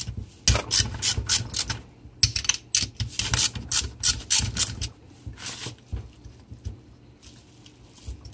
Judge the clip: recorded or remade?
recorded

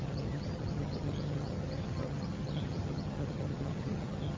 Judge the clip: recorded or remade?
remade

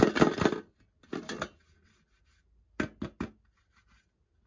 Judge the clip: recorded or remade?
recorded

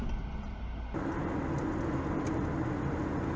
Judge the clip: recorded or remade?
recorded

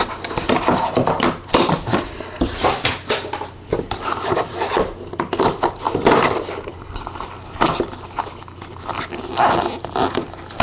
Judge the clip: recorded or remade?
recorded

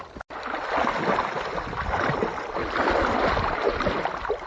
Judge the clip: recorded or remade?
recorded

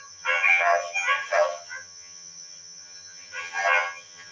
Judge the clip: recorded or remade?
remade